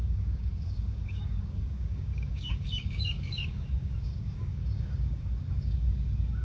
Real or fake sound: fake